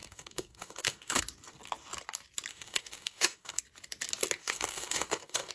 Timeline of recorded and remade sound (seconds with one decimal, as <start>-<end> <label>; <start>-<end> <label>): 0.0-1.2 remade; 1.2-2.5 recorded; 2.5-3.6 remade; 3.6-4.4 recorded; 4.4-5.5 remade